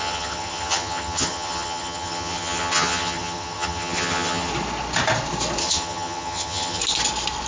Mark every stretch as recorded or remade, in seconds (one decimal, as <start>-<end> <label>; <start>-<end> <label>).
0.0-4.5 remade; 4.5-5.6 recorded; 5.6-6.8 remade; 6.8-7.5 recorded